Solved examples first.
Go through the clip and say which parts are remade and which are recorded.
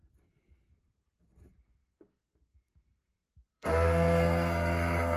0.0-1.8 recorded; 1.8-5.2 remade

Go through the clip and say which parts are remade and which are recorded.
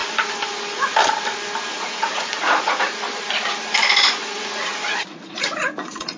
0.0-1.7 recorded; 1.7-2.9 remade; 2.9-4.2 recorded; 4.2-6.2 remade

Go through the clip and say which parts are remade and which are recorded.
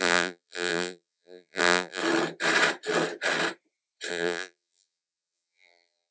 0.0-2.0 remade; 2.0-4.1 recorded; 4.1-6.1 remade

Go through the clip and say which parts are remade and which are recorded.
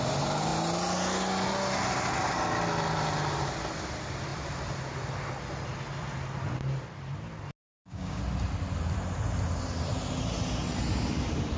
0.0-7.7 recorded; 7.7-8.2 remade; 8.2-11.6 recorded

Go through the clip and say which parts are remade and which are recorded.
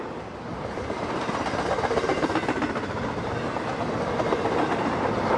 0.0-0.5 recorded; 0.5-1.3 remade; 1.3-5.4 recorded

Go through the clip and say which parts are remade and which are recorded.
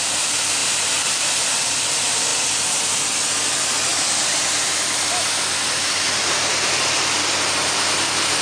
0.0-0.6 recorded; 0.6-1.3 remade; 1.3-3.9 recorded; 3.9-4.5 remade; 4.5-8.4 recorded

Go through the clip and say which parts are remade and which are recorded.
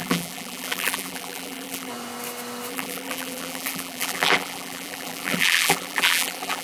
0.0-1.9 remade; 1.9-2.7 recorded; 2.7-6.6 remade